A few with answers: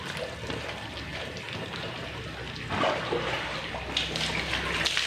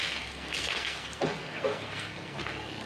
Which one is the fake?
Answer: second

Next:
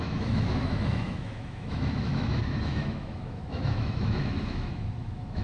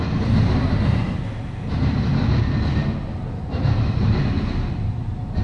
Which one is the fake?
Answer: first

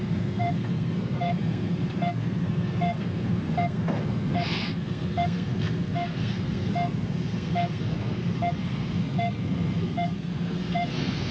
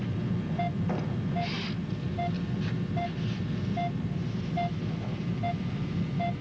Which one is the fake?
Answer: first